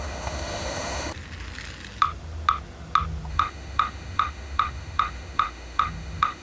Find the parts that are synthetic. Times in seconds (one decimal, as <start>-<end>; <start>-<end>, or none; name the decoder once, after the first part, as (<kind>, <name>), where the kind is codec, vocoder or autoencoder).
0.0-1.1 (autoencoder, DAC-VAE); 3.3-6.4